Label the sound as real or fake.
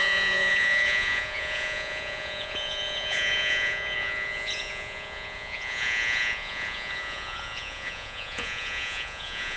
fake